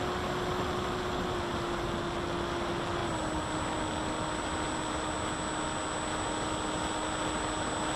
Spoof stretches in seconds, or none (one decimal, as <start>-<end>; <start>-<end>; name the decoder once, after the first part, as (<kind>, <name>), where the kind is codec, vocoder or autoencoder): none